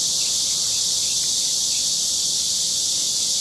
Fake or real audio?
real